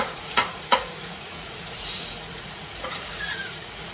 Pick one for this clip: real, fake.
fake